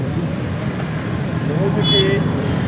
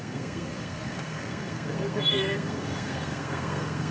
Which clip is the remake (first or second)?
second